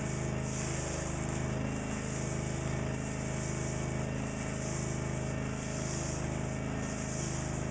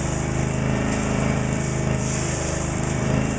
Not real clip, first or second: second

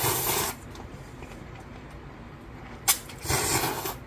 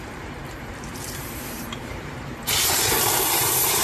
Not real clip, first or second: second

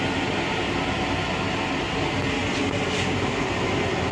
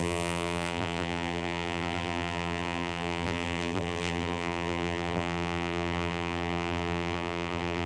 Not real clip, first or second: second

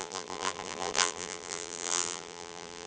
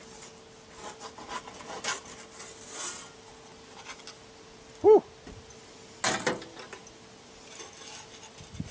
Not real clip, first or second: first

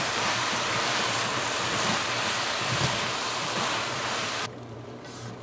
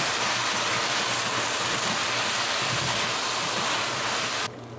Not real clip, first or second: first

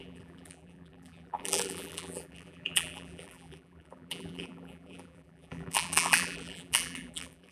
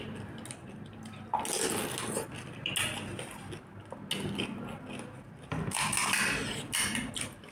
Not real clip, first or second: first